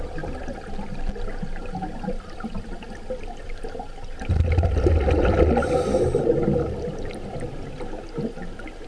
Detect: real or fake real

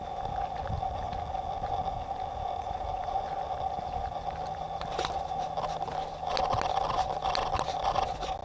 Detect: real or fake real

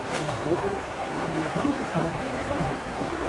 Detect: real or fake fake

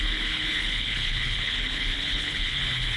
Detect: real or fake fake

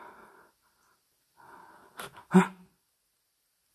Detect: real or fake real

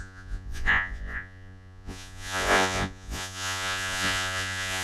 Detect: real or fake fake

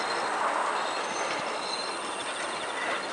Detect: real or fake real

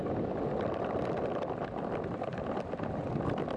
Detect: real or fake real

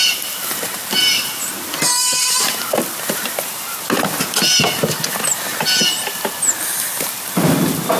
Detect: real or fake real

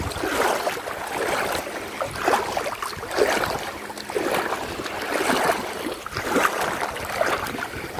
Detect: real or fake real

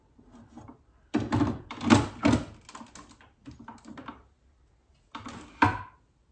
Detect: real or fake real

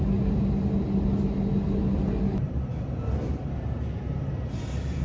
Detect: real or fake real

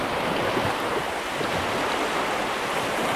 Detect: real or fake real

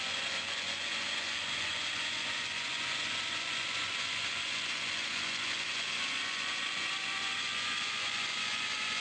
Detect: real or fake fake